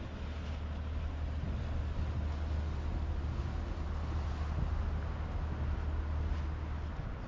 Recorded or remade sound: recorded